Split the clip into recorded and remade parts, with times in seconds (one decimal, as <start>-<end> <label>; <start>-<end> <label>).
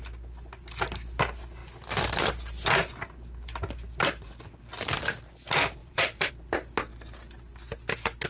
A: 0.0-5.8 recorded; 5.8-6.3 remade; 6.3-8.3 recorded